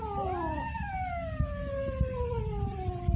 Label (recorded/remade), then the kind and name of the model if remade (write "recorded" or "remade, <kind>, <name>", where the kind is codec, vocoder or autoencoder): recorded